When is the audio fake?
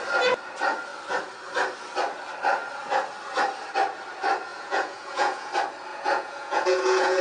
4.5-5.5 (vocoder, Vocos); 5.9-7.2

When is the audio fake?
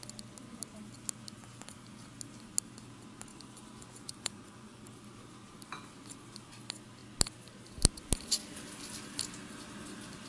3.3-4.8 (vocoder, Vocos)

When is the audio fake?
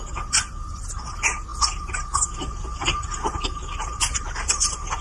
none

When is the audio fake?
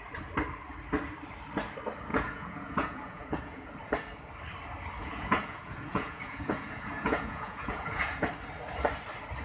2.1-3.7 (vocoder, Vocos); 5.0-8.3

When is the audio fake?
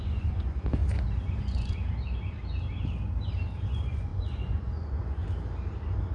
0.0-0.8 (vocoder, Vocos); 1.4-1.8; 3.6-5.2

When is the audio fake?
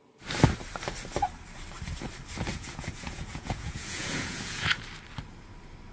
2.5-4.8 (vocoder, Vocos)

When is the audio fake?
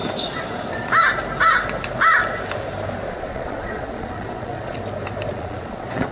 3.1-4.8 (vocoder, Vocos); 5.3-6.1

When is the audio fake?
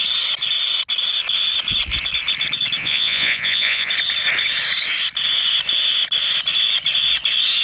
2.8-3.9 (vocoder, Vocos)